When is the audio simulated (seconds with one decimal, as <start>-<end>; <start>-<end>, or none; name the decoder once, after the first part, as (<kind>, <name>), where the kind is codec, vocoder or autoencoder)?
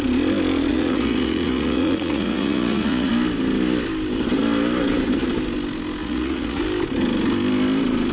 0.7-3.1 (vocoder, Vocos); 6.0-6.6